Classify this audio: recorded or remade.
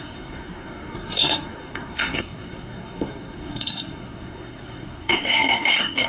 remade